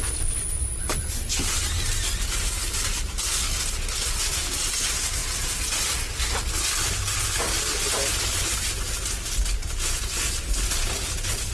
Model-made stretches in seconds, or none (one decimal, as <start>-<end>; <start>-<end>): none